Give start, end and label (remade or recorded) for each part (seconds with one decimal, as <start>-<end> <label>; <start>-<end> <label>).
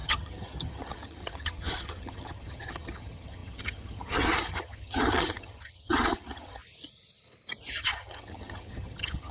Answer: 0.0-6.6 remade; 6.6-7.7 recorded; 7.7-9.3 remade